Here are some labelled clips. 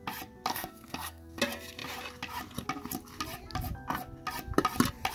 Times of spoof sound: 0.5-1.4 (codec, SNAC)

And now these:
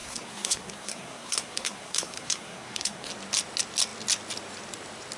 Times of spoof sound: 0.0-3.1 (codec, SNAC)